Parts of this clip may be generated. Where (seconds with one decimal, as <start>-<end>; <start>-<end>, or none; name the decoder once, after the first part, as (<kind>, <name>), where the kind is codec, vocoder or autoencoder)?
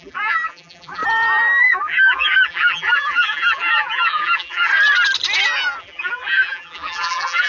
0.0-1.0 (vocoder, BigVGAN v2); 1.6-4.7; 5.8-7.5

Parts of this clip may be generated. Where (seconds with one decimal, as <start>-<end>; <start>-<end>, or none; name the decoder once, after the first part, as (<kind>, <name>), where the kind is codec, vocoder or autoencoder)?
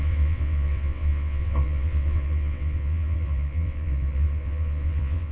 0.0-5.3 (vocoder, WaveNeXt)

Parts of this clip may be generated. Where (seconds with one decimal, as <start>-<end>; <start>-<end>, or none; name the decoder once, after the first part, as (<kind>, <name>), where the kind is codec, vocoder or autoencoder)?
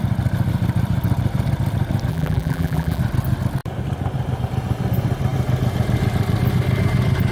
2.1-3.0 (vocoder, BigVGAN v2)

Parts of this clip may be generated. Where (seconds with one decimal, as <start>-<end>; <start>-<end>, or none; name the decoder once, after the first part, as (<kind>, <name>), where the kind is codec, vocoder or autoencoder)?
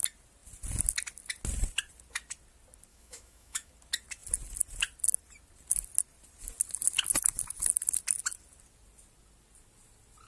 2.9-3.7 (autoencoder, DAC-VAE)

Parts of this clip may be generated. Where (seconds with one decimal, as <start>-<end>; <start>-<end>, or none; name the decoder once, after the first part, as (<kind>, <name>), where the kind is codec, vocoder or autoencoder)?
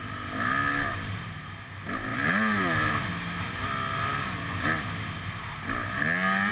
none